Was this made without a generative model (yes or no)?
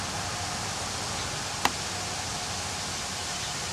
yes